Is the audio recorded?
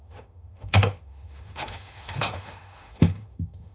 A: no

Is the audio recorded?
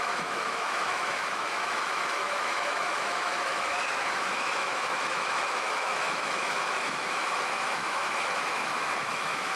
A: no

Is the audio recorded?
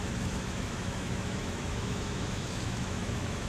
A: no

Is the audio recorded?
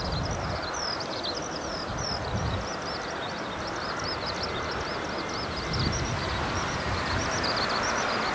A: yes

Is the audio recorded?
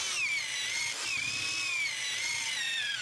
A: yes